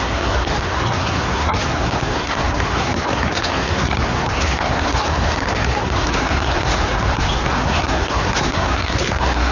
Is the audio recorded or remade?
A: remade